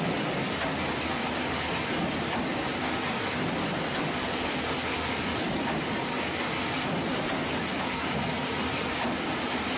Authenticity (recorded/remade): recorded